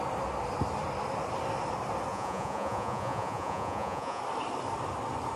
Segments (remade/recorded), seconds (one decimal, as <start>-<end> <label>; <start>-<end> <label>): 0.0-2.1 recorded; 2.1-4.2 remade; 4.2-5.4 recorded